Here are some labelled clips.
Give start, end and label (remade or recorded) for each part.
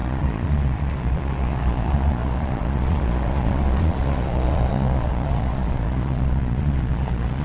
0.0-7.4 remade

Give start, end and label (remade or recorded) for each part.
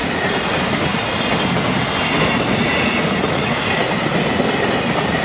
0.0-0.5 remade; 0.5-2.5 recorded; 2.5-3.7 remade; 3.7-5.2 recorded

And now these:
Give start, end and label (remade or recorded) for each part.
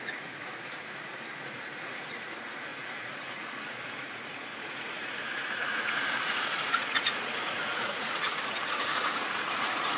0.0-10.0 remade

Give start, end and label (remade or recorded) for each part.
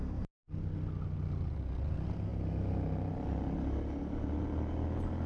0.0-5.3 recorded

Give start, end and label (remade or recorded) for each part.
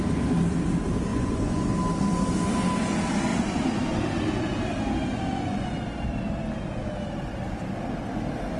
0.0-1.1 recorded; 1.1-1.7 remade; 1.7-5.1 recorded; 5.1-5.7 remade; 5.7-8.6 recorded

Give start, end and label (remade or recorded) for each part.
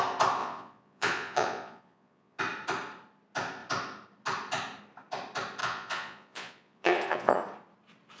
0.0-0.4 recorded; 0.4-2.4 remade; 2.4-5.6 recorded; 5.6-7.4 remade; 7.4-8.2 recorded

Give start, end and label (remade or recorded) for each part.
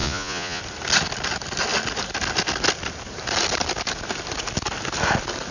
0.0-0.6 remade; 0.6-5.5 recorded